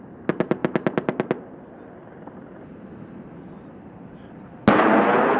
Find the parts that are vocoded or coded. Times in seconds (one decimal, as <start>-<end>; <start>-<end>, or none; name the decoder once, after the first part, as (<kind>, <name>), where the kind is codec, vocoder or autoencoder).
none